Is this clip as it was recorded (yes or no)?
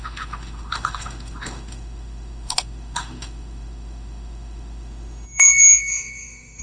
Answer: no